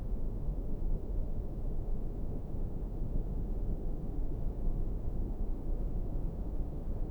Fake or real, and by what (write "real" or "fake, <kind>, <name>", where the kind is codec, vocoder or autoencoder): fake, autoencoder, DAC-VAE